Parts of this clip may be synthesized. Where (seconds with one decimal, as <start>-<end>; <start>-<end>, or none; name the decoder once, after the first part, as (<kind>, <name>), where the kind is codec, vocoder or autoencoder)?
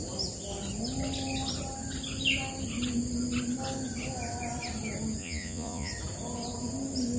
5.2-5.9 (vocoder, Vocos)